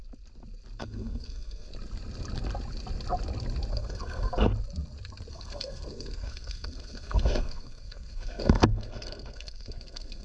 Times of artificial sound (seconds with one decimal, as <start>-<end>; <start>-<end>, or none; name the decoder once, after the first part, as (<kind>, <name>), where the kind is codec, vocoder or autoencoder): 0.8-1.7 (codec, SNAC); 3.7-4.5; 5.3-10.2